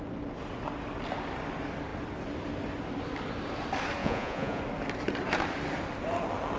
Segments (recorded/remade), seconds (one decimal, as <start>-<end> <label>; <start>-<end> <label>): 0.0-4.0 recorded; 4.0-4.6 remade; 4.6-6.6 recorded